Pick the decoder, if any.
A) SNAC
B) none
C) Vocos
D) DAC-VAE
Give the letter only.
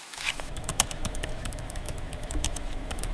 D